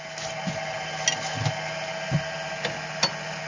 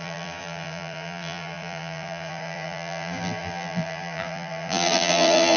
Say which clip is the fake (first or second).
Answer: second